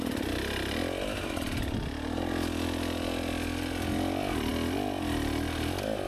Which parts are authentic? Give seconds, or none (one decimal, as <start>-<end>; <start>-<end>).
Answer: 0.0-6.1